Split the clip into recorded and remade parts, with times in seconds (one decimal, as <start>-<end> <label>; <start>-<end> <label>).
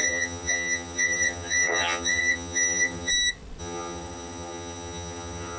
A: 0.0-3.1 remade; 3.1-3.6 recorded; 3.6-5.6 remade